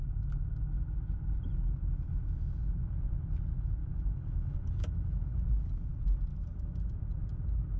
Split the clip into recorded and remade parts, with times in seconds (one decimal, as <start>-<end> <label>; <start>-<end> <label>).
0.0-3.8 recorded; 3.8-5.5 remade; 5.5-6.3 recorded; 6.3-7.0 remade; 7.0-7.8 recorded